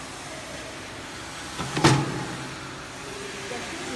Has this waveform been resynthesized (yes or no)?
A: no